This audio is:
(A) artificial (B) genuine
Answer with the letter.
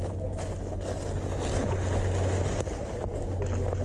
B